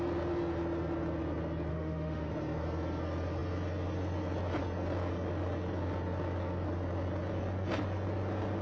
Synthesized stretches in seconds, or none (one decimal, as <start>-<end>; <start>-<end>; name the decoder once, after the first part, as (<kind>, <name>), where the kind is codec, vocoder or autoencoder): 1.7-2.3 (autoencoder, DAC-VAE)